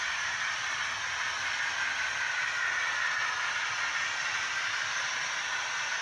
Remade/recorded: recorded